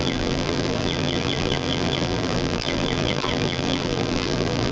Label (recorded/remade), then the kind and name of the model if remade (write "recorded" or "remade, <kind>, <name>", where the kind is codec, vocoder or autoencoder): remade, vocoder, BigVGAN v2